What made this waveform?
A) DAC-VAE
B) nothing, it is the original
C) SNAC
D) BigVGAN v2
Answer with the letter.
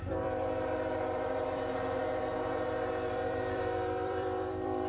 D